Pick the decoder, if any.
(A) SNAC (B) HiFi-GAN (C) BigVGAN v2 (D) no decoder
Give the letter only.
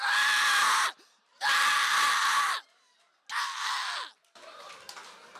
D